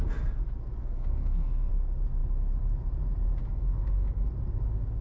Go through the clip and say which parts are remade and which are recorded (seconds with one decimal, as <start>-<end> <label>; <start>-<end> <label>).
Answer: 0.0-0.8 recorded; 0.8-1.7 remade; 1.7-3.4 recorded; 3.4-4.3 remade; 4.3-5.0 recorded